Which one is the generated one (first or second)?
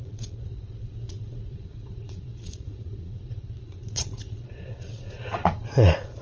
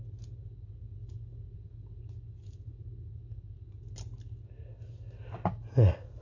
first